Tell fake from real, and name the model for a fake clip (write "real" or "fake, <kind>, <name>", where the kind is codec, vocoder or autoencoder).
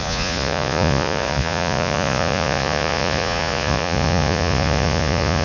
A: fake, vocoder, Vocos